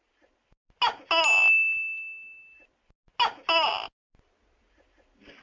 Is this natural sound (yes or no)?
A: yes